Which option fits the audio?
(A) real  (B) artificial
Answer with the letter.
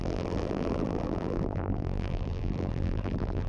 B